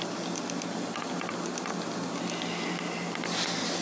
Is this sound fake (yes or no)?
no